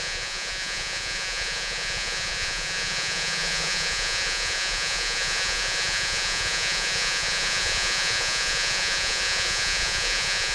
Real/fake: fake